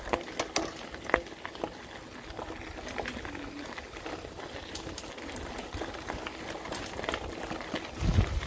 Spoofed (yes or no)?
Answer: no